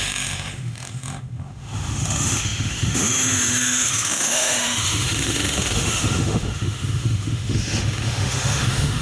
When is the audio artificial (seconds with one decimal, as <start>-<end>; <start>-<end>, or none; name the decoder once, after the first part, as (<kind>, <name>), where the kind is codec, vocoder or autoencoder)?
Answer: 0.0-9.0 (autoencoder, DAC-VAE)